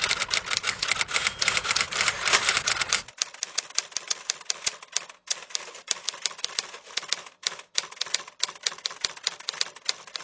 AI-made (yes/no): no